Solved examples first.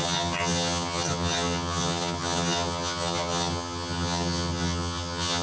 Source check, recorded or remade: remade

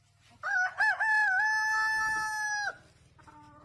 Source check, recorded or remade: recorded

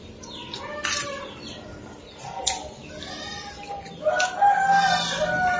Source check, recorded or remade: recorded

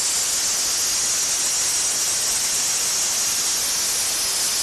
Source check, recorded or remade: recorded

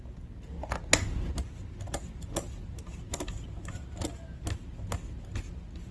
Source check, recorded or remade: recorded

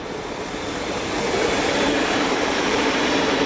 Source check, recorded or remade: remade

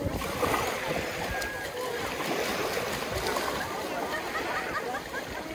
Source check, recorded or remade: recorded